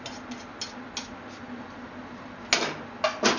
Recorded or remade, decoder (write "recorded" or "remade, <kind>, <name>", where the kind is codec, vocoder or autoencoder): recorded